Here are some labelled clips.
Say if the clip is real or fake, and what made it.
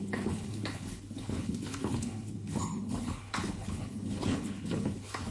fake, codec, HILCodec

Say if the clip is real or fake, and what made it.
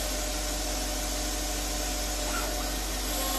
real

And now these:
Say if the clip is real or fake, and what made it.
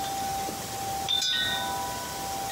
real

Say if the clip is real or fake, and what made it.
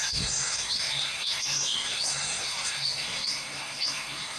fake, codec, SNAC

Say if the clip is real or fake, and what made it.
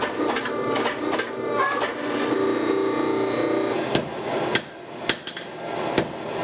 real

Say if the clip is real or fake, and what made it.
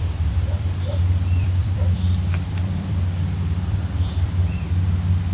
fake, vocoder, BigVGAN v2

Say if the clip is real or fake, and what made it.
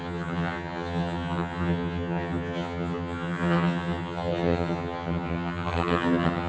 fake, vocoder, HiFi-GAN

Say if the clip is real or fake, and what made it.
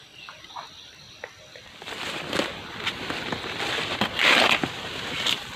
real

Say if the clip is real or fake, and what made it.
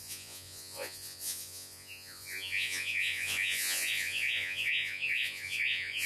fake, vocoder, Vocos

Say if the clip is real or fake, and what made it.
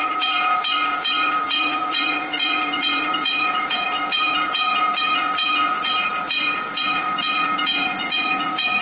fake, vocoder, Vocos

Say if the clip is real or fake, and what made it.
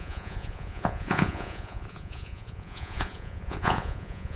fake, vocoder, Vocos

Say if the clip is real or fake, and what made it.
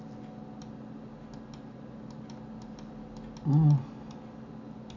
real